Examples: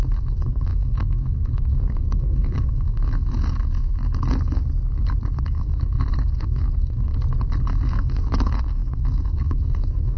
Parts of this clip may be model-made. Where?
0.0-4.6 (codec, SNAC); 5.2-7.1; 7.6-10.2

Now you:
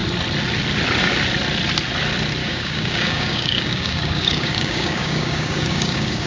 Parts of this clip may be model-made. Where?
2.4-6.3 (codec, DAC)

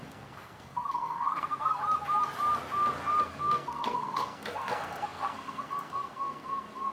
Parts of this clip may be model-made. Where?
0.0-1.8 (codec, SNAC); 3.2-6.9

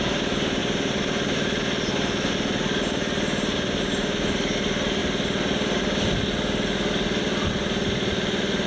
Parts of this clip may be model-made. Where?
0.0-5.0 (vocoder, BigVGAN v2); 7.5-8.7

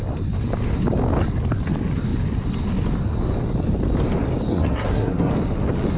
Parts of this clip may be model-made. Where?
4.5-5.3 (codec, SNAC)

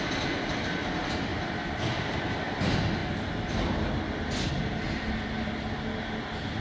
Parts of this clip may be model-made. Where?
none